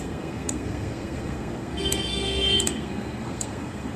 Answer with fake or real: fake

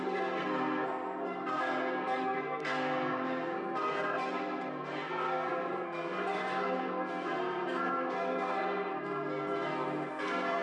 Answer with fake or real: fake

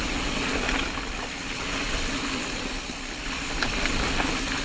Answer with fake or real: real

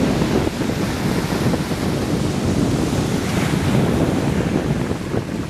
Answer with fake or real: real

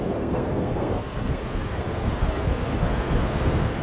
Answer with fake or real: fake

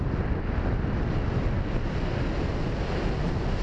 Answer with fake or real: real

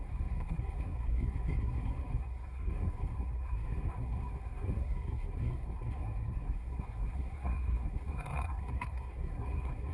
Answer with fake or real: fake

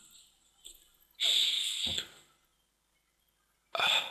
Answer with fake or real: real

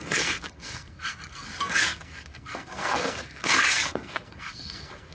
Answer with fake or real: fake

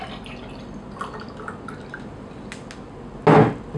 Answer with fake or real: real